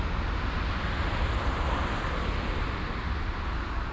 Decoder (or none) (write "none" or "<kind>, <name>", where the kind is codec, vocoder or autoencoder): none